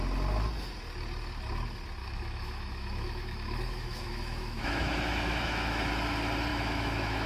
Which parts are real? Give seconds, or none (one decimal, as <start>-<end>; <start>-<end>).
0.0-2.0; 5.9-6.5